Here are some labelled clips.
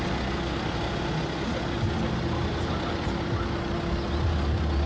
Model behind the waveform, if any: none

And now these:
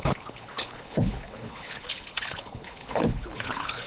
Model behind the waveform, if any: codec, HILCodec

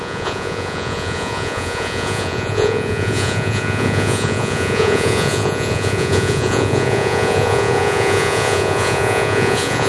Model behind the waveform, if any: vocoder, Vocos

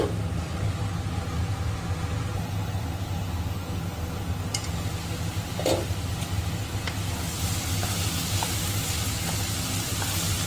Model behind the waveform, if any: none